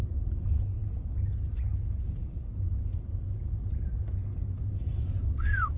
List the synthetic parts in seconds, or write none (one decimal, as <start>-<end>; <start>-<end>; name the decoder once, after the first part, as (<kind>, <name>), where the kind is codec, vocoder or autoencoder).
none